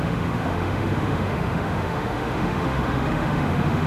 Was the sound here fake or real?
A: fake